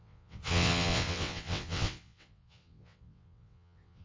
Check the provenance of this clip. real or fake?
fake